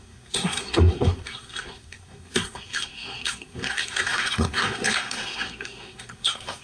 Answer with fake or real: fake